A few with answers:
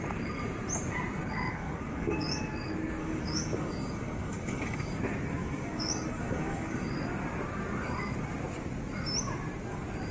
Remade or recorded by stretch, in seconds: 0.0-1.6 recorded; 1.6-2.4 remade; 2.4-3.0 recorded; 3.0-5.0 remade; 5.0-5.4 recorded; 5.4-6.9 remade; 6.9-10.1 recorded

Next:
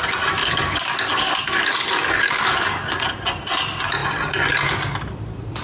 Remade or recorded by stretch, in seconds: 0.0-0.4 recorded; 0.4-3.0 remade; 3.0-5.6 recorded

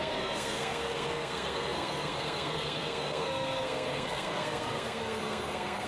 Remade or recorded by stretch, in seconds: 0.0-5.9 remade

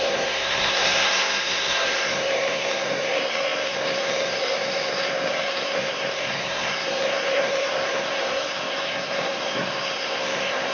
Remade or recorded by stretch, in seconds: 0.0-10.7 remade

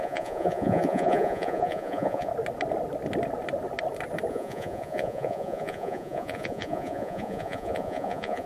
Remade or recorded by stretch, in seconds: 0.0-2.3 remade; 2.3-4.3 recorded; 4.3-8.5 remade

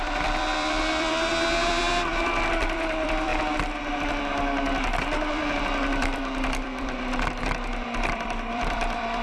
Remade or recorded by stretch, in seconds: 0.0-1.3 remade; 1.3-2.5 recorded; 2.5-3.3 remade; 3.3-5.3 recorded; 5.3-9.2 remade

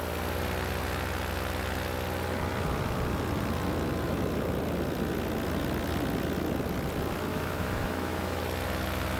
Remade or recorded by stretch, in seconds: 0.0-7.3 recorded; 7.3-8.4 remade; 8.4-9.2 recorded